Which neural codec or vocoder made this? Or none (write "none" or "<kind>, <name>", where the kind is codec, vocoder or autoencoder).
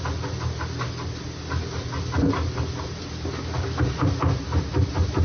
none